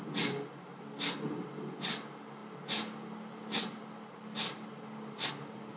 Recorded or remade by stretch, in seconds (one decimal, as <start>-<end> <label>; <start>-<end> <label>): 0.0-5.8 recorded